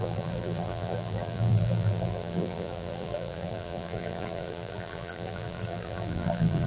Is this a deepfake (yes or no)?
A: yes